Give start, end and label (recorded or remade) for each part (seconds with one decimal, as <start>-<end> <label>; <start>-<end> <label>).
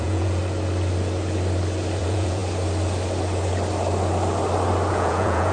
0.0-0.4 remade; 0.4-2.0 recorded; 2.0-2.4 remade; 2.4-4.9 recorded; 4.9-5.5 remade